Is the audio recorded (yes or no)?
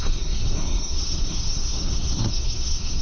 no